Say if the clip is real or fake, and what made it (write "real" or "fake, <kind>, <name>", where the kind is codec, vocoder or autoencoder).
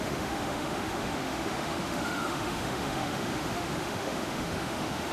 fake, autoencoder, DAC-VAE